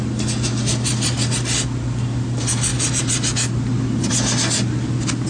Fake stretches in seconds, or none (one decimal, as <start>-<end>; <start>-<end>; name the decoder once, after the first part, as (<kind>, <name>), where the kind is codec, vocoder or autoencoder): none